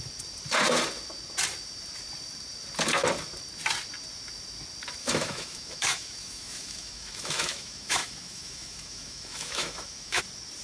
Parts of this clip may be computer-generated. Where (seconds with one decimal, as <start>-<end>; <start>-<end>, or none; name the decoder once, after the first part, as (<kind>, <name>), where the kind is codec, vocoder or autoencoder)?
5.0-10.2 (autoencoder, DAC-VAE)